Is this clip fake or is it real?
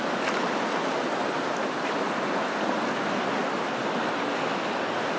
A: real